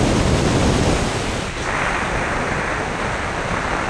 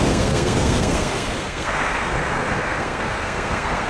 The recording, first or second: first